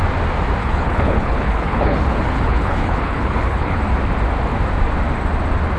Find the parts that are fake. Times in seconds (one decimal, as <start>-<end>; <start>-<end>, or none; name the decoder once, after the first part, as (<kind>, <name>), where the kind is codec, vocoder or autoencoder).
0.6-3.8 (codec, HILCodec)